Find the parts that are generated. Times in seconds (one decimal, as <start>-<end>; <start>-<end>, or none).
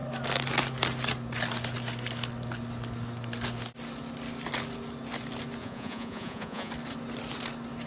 5.6-6.7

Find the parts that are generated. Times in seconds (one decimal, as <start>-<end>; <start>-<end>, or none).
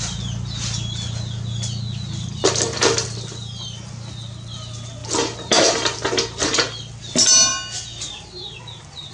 5.0-7.0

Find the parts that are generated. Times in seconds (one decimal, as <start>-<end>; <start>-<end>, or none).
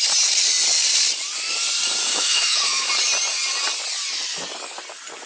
2.0-2.9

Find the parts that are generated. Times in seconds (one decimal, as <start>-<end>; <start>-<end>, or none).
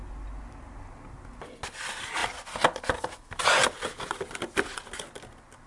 none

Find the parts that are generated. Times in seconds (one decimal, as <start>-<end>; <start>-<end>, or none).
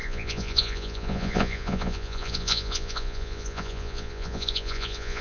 0.0-5.2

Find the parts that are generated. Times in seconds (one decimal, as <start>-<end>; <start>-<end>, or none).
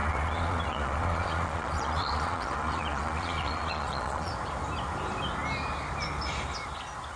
0.0-4.3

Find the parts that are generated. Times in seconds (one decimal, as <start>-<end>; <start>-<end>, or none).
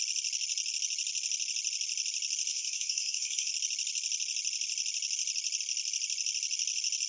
2.5-3.5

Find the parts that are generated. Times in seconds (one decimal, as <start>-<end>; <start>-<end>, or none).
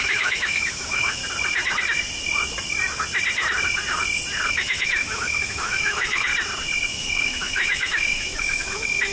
0.0-1.2; 4.5-6.3; 6.9-9.1